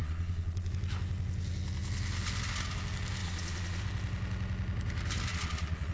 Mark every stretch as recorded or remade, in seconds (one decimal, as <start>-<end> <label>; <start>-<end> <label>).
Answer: 0.0-0.7 remade; 0.7-3.2 recorded; 3.2-3.8 remade; 3.8-5.3 recorded; 5.3-5.9 remade